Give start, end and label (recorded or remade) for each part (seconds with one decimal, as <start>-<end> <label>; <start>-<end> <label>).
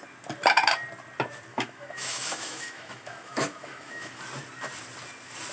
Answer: 0.0-1.5 recorded; 1.5-4.2 remade; 4.2-5.5 recorded